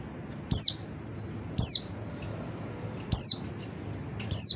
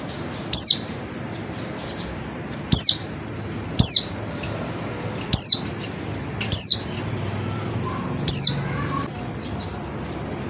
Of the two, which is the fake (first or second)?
second